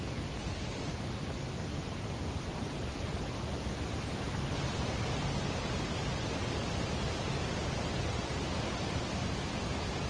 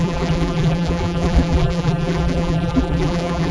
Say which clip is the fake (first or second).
second